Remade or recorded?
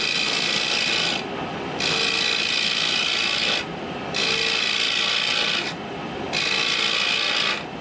recorded